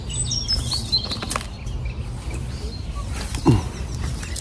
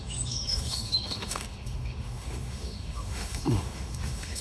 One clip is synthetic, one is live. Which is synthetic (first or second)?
second